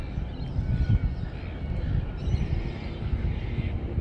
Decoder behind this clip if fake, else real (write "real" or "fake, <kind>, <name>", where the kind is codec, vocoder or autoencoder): real